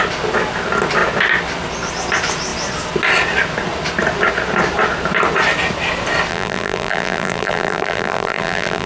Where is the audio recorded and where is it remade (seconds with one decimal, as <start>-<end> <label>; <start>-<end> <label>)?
0.0-6.3 recorded; 6.3-8.9 remade